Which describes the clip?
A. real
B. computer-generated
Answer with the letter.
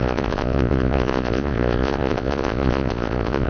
B